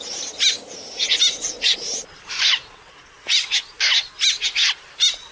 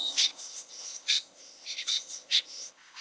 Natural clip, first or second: first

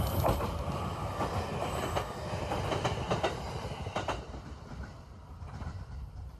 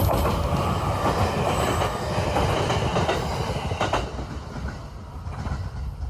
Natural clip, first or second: second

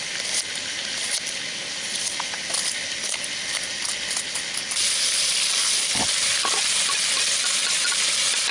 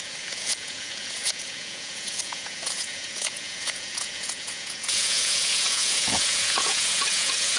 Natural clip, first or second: first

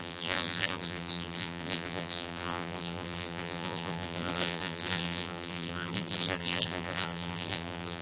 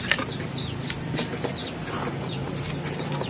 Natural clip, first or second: second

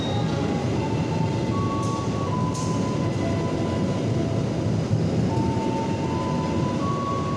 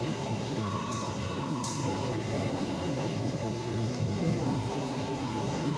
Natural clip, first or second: first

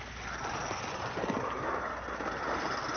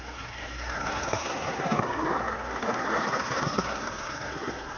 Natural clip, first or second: first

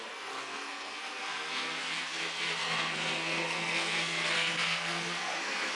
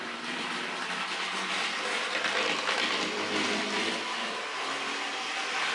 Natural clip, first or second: second